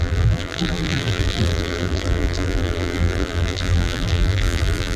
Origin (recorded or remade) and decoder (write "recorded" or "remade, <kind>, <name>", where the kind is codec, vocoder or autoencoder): remade, vocoder, BigVGAN v2